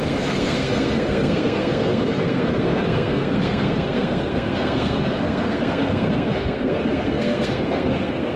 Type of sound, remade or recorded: remade